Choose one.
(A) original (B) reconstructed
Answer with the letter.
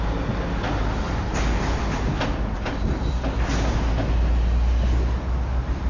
A